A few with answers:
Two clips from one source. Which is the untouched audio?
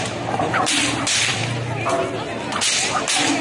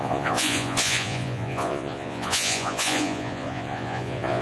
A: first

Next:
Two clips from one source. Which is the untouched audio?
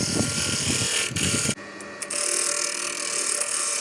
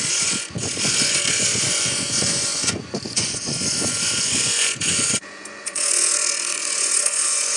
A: first